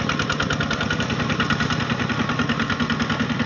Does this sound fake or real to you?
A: real